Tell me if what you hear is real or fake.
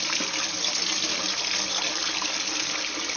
real